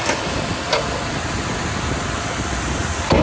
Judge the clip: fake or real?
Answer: fake